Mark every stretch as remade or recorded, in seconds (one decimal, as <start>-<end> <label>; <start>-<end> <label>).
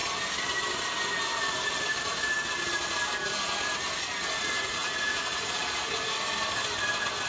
0.0-4.4 recorded; 4.4-5.6 remade; 5.6-7.3 recorded